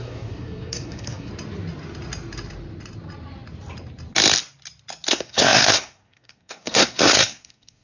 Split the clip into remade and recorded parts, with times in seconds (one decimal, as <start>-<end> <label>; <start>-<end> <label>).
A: 0.0-1.3 remade; 1.3-5.1 recorded; 5.1-7.8 remade